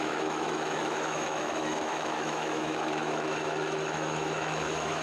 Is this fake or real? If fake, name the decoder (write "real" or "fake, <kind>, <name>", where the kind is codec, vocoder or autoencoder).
fake, autoencoder, DAC-VAE